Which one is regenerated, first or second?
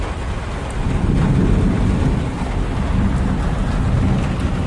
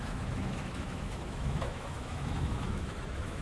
second